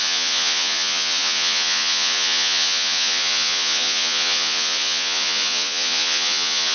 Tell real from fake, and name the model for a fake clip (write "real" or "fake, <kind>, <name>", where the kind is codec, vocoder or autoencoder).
fake, vocoder, Vocos